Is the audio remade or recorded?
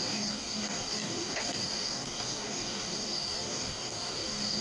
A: remade